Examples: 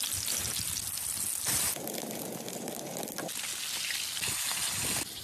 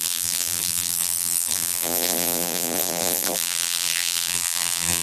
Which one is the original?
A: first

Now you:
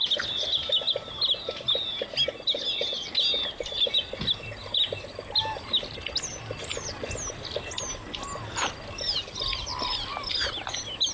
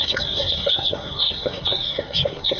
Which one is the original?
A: first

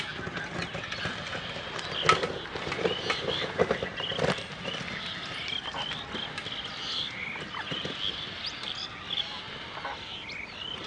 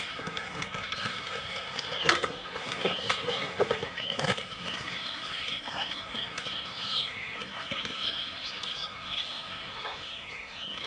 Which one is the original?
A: first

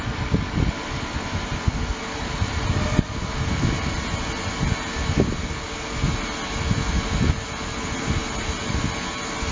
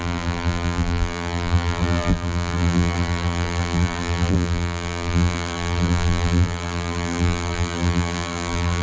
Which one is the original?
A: first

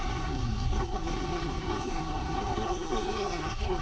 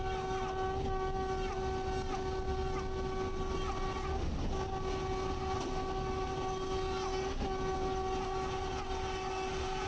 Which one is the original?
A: second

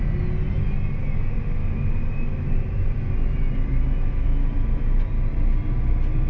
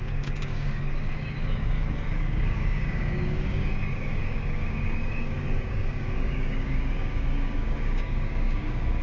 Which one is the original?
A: first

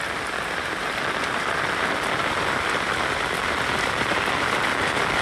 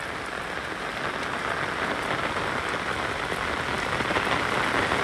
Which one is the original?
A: second